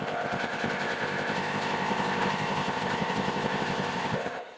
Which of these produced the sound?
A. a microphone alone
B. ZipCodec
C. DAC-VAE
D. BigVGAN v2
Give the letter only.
B